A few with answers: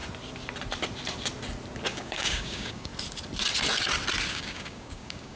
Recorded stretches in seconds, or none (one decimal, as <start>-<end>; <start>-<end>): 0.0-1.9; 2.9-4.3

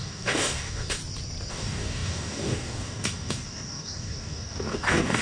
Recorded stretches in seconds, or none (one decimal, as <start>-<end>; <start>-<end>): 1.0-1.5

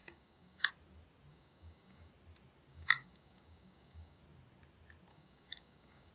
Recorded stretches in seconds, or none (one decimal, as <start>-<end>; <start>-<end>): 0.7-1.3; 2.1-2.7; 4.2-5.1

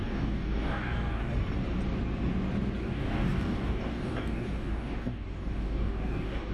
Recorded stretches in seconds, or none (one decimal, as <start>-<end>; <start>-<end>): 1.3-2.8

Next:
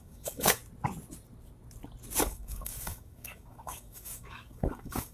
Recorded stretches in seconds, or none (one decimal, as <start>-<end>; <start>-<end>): 0.6-2.2

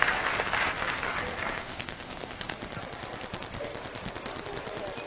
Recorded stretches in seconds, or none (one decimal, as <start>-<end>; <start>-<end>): 2.6-5.1

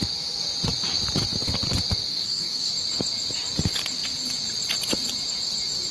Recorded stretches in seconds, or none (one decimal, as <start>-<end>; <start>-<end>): 0.0-2.1; 2.7-5.9

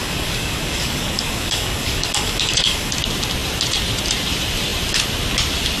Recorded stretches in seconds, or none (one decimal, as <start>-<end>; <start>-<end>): 2.9-5.8